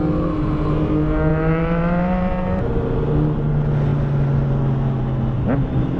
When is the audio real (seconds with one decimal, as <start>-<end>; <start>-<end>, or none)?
0.0-1.3; 2.6-6.0